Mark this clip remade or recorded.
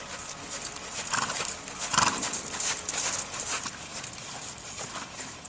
recorded